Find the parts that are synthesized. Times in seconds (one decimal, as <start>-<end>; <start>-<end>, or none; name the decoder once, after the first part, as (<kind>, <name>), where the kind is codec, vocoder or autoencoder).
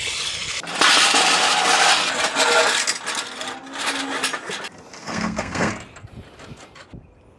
5.0-5.7 (codec, SNAC)